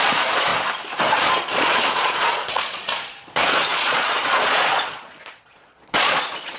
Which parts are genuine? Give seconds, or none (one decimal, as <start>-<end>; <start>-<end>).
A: 0.5-1.2